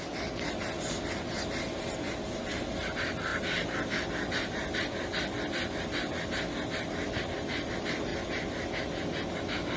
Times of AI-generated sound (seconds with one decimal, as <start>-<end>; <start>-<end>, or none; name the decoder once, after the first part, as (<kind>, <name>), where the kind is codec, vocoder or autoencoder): none